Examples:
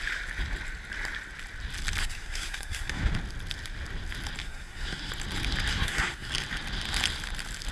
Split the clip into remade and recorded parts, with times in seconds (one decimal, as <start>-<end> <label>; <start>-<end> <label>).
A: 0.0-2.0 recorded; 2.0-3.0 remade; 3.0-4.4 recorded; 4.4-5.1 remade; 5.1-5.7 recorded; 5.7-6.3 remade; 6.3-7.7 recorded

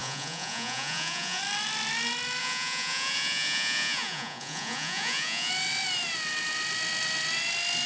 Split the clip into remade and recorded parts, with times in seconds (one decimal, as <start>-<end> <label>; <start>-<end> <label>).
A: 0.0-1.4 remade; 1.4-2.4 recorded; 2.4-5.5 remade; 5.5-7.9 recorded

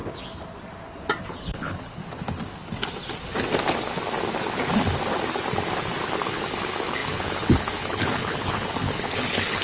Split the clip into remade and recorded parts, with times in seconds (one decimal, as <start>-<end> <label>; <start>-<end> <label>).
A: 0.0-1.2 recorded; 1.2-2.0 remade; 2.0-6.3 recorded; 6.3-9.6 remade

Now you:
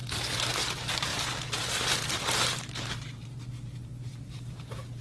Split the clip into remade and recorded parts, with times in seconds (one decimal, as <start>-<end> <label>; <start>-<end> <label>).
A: 0.0-5.0 remade

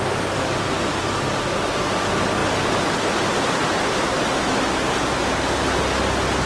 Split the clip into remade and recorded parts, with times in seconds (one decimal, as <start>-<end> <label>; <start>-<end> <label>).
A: 0.0-6.5 recorded

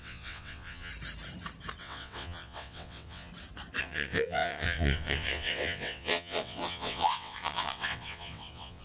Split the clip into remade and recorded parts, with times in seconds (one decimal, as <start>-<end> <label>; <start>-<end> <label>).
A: 0.0-0.9 remade; 0.9-1.8 recorded; 1.8-3.3 remade; 3.3-3.8 recorded; 3.8-8.8 remade

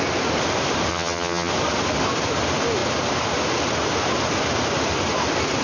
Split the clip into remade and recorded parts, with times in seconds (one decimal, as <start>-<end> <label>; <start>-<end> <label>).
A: 0.0-0.9 recorded; 0.9-1.5 remade; 1.5-5.6 recorded